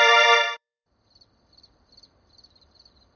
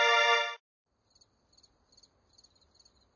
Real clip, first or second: second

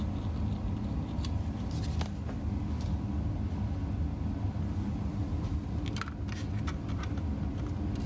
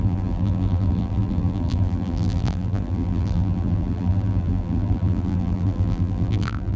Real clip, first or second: first